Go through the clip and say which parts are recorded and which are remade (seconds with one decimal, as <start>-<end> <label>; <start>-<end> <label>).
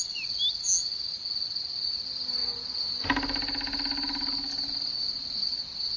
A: 0.0-6.0 recorded